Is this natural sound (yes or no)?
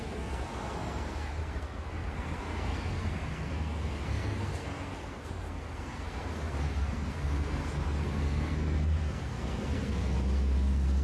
no